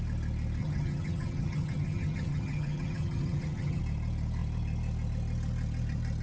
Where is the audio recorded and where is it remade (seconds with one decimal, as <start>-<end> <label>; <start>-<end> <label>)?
0.0-0.6 recorded; 0.6-3.8 remade; 3.8-6.2 recorded